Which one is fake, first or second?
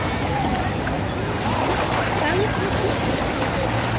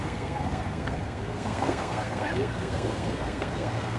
second